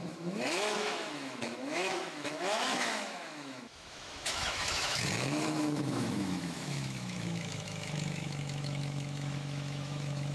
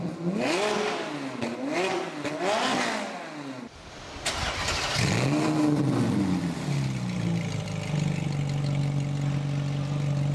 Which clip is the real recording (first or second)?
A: second